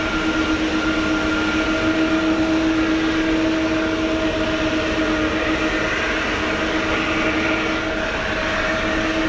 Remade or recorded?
recorded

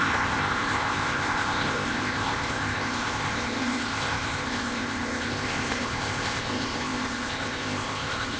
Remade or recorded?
remade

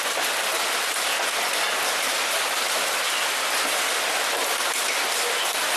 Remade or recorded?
recorded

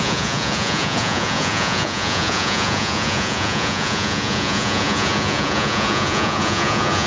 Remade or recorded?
remade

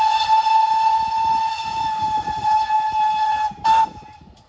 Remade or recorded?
recorded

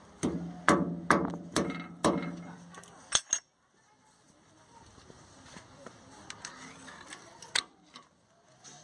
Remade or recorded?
recorded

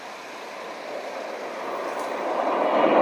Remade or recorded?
recorded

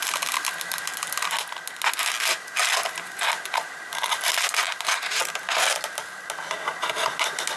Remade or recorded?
recorded